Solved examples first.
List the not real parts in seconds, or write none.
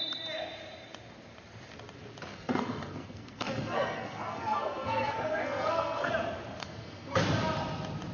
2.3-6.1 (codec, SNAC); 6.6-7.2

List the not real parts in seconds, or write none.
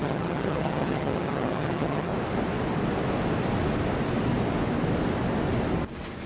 0.0-2.1 (vocoder, HiFi-GAN)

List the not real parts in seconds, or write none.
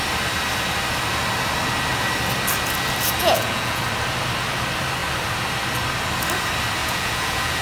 3.2-3.8 (vocoder, Vocos); 6.8-7.6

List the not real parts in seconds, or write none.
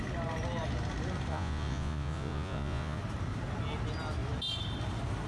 1.3-3.0 (vocoder, Vocos)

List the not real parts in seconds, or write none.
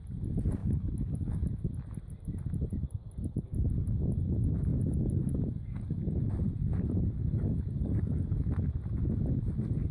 0.6-1.6 (codec, DAC); 2.7-3.9; 4.7-6.3; 7.2-8.7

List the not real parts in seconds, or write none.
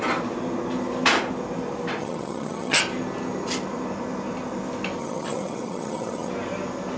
2.0-2.8 (vocoder, HiFi-GAN); 5.0-6.3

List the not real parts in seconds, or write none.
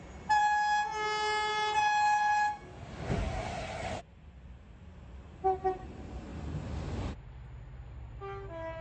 none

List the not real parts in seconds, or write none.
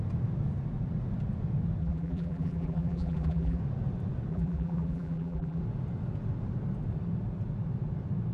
1.8-3.6 (vocoder, BigVGAN v2); 4.3-5.6